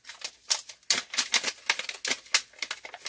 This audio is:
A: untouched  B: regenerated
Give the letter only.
A